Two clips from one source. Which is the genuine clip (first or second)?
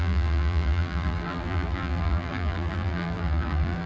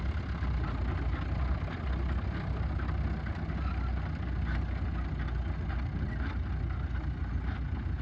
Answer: second